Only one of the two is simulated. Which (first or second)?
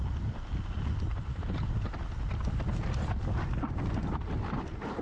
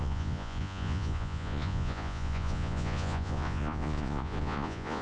second